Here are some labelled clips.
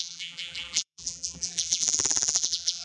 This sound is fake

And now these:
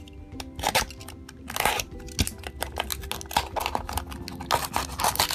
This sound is real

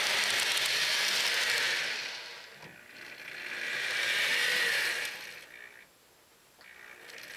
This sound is real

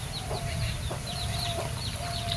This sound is fake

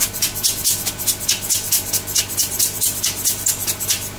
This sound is real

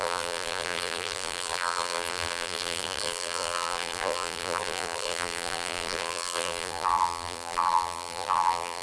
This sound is fake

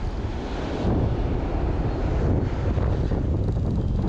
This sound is real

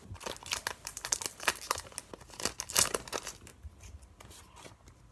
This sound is real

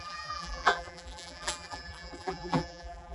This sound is fake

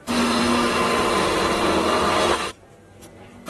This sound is fake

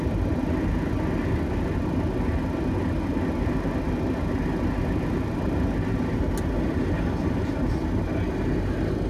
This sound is real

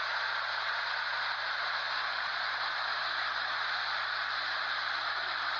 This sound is fake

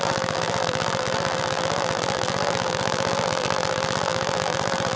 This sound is fake